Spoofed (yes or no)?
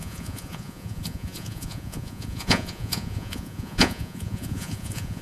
yes